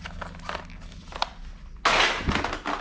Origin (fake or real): real